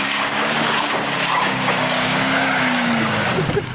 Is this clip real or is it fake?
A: fake